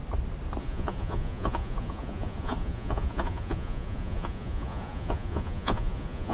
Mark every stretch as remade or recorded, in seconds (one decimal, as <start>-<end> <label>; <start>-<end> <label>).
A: 0.0-0.6 recorded; 0.6-6.3 remade